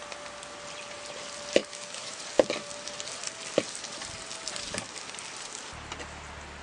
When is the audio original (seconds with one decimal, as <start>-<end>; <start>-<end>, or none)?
0.0-1.6; 2.2-6.6